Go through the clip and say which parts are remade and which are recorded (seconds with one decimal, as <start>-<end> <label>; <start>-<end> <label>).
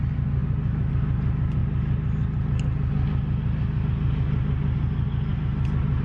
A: 0.0-6.0 recorded